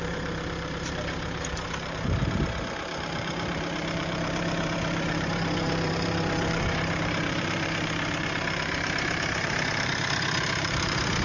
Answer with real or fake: fake